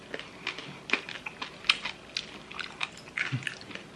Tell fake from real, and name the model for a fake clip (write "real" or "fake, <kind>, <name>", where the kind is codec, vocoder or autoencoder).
real